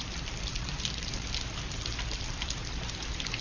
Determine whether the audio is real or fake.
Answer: fake